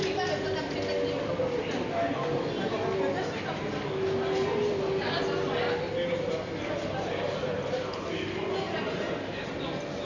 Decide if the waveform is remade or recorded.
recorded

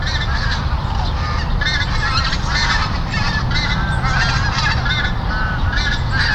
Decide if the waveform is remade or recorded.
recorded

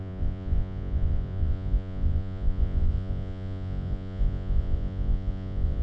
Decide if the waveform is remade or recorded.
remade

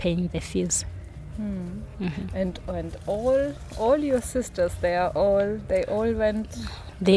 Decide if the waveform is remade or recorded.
recorded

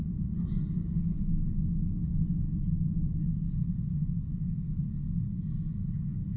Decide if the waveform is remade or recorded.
recorded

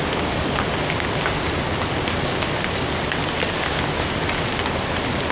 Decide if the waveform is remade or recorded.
recorded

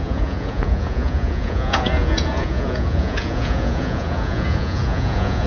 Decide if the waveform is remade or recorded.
remade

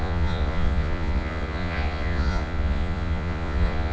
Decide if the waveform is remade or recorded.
remade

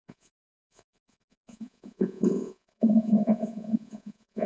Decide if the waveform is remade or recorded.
remade